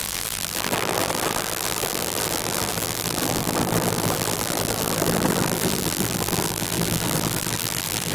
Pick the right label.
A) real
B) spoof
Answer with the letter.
B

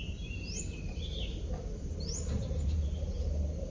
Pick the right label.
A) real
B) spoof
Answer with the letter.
B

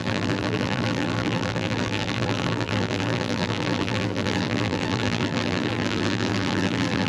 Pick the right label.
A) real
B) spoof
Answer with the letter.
B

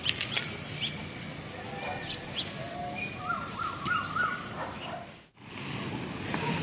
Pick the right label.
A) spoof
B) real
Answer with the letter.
B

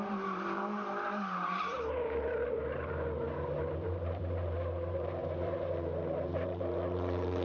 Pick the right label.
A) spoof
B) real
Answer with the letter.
A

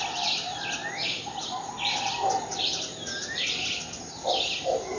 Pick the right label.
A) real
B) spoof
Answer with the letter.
A